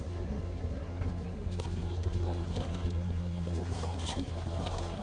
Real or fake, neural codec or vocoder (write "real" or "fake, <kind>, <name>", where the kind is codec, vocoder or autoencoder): fake, codec, SNAC